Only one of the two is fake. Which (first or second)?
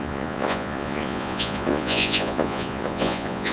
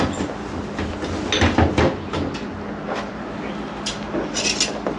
first